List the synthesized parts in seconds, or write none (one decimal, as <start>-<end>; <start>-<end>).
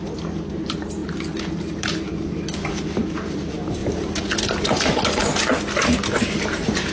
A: 0.0-1.0; 1.5-5.2; 6.2-6.9